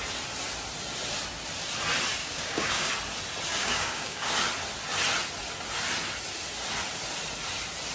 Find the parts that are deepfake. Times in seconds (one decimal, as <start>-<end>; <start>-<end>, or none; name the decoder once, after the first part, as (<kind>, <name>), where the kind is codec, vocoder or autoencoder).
2.2-2.9 (codec, DAC); 3.5-4.3